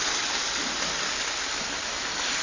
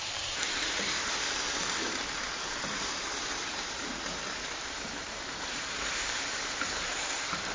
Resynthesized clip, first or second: second